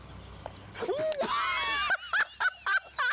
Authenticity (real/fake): real